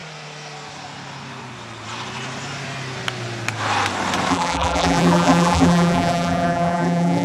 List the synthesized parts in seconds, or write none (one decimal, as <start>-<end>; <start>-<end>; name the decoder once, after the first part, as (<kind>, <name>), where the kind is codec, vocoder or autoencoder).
4.3-7.2 (vocoder, BigVGAN v2)